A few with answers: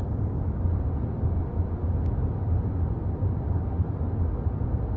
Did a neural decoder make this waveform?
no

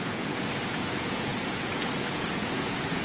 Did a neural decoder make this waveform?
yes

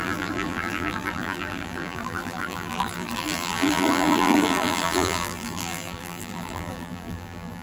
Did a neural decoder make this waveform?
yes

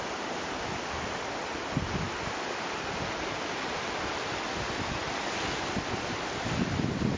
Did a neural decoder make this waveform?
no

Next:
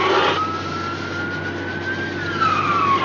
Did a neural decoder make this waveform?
no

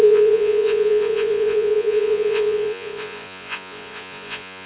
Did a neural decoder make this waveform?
yes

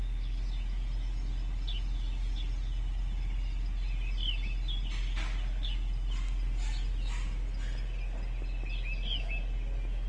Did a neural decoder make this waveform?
no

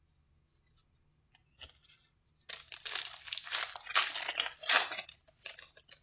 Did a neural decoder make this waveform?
no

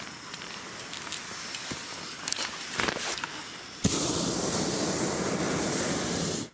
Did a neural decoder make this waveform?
yes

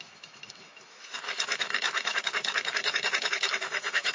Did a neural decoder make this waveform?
yes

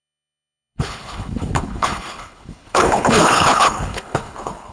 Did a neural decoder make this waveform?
yes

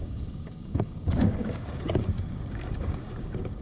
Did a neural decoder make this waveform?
yes